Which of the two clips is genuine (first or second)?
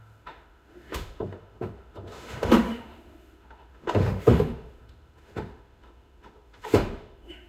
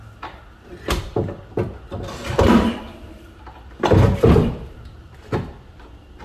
second